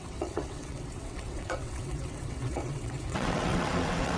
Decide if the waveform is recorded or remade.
remade